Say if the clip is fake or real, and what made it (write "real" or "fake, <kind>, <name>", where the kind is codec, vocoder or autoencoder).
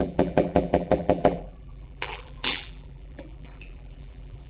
fake, vocoder, BigVGAN v2